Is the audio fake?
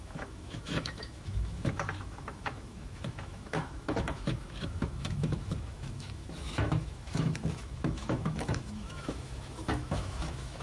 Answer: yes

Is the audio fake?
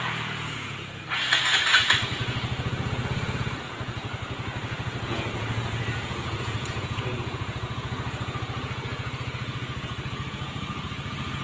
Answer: yes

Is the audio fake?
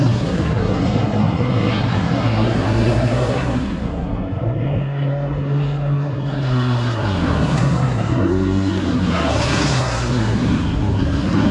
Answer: yes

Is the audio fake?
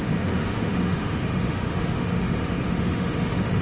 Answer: yes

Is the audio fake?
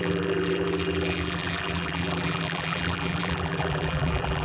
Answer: yes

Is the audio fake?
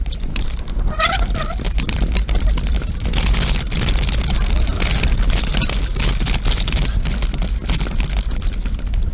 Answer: no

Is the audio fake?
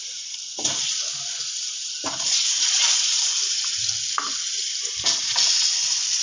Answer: yes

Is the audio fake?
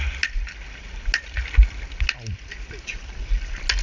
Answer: no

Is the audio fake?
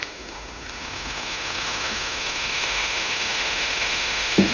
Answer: yes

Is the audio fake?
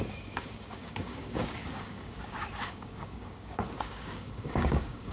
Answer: yes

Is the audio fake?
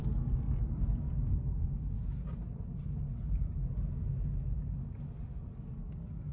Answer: no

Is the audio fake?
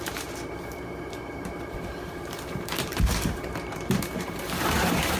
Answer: yes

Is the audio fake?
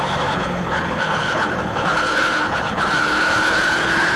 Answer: yes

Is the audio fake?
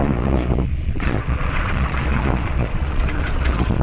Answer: yes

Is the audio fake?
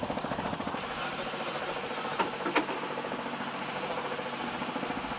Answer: no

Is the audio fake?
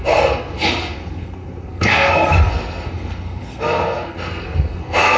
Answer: yes